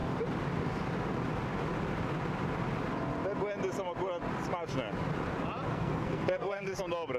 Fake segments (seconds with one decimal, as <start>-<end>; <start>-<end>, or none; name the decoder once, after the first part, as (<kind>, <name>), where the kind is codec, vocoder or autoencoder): 5.7-6.8 (codec, SNAC)